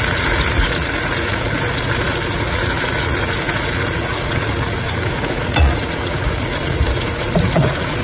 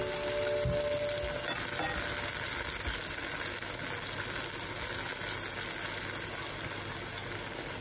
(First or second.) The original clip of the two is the second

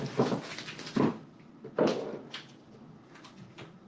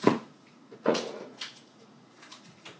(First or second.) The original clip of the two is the first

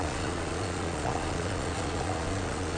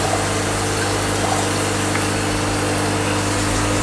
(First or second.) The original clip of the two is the second